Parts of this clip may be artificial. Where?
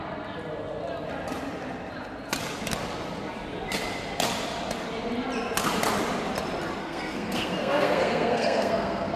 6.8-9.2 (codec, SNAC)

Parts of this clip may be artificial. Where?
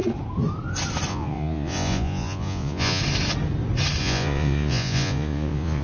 1.1-3.0 (vocoder, Vocos); 4.0-5.8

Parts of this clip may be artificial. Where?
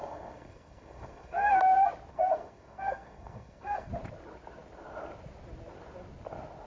0.0-1.6 (codec, SNAC); 2.1-3.9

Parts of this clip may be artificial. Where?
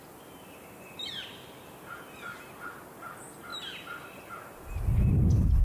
none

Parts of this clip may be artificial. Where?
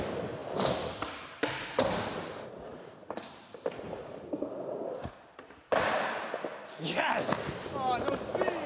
none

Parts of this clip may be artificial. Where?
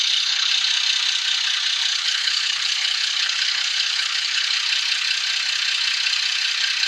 0.0-0.5 (codec, HILCodec); 1.9-4.6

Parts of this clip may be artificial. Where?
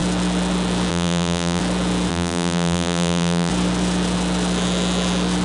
0.9-1.6 (vocoder, BigVGAN v2); 2.1-3.5